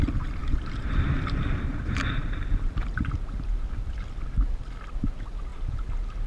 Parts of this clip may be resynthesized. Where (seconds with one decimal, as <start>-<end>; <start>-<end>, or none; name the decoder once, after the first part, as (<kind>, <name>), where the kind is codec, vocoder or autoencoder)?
0.4-2.7 (vocoder, BigVGAN v2); 5.5-6.3

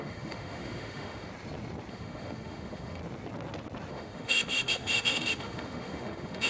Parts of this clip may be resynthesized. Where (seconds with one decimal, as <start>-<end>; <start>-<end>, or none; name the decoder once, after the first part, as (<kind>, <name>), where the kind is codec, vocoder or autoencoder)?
0.0-1.3 (autoencoder, DAC-VAE); 1.9-3.0; 3.9-6.5

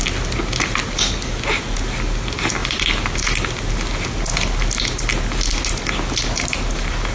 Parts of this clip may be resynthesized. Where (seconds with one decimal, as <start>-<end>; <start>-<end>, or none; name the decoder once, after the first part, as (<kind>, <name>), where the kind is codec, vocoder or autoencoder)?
none